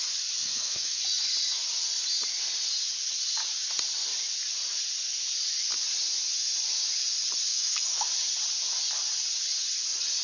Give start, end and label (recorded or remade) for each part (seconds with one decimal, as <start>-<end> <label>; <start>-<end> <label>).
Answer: 0.0-0.4 recorded; 0.4-1.0 remade; 1.0-7.5 recorded; 7.5-8.1 remade; 8.1-10.2 recorded